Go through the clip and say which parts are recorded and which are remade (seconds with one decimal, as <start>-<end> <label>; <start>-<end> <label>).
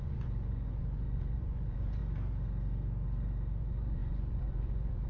0.0-2.0 remade; 2.0-3.6 recorded; 3.6-5.1 remade